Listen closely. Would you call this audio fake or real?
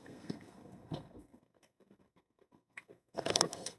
fake